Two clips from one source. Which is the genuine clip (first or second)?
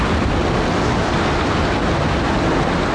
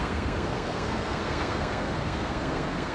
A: first